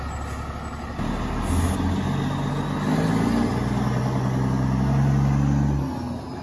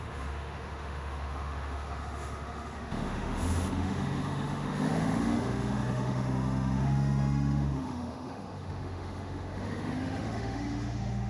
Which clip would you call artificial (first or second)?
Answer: second